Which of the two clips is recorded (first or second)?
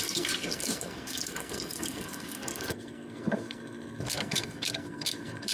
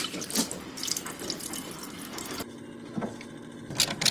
second